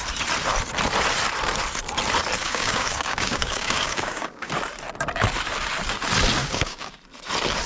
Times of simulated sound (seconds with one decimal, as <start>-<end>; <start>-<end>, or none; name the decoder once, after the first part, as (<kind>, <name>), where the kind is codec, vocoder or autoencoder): 2.4-4.5 (codec, DAC); 6.4-7.0

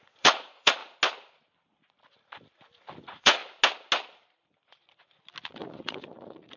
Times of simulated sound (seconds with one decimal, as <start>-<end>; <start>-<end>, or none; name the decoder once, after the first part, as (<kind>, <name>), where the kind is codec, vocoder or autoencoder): 0.0-0.8 (vocoder, Vocos); 3.0-3.4; 5.5-6.6

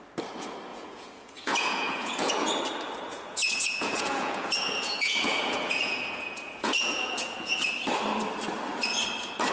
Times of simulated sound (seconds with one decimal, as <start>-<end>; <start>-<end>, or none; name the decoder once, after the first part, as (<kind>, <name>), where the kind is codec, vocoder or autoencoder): 0.7-2.5 (vocoder, Vocos); 3.1-7.7

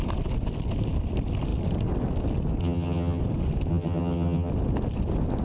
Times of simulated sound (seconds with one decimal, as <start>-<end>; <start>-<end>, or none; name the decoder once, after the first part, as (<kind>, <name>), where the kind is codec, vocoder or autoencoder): 2.6-3.2 (vocoder, HiFi-GAN); 3.7-4.5

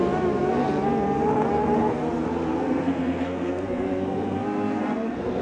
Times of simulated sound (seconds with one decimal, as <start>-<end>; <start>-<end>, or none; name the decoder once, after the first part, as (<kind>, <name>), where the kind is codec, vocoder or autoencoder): 2.6-5.4 (codec, SNAC)